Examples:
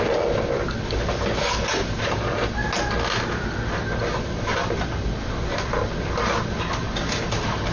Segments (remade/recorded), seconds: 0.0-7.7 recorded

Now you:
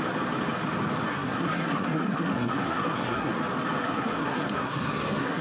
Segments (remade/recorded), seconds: 0.0-1.1 recorded; 1.1-3.3 remade; 3.3-3.8 recorded; 3.8-5.4 remade

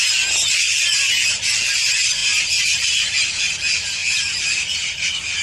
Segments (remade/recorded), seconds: 0.0-2.2 recorded; 2.2-3.5 remade; 3.5-4.0 recorded; 4.0-5.0 remade; 5.0-5.4 recorded